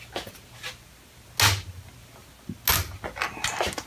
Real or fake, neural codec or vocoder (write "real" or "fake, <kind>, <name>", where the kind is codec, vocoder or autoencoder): real